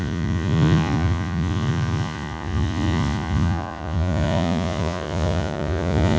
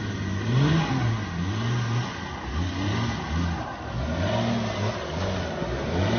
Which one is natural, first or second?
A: second